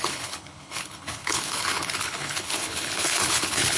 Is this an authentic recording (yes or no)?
no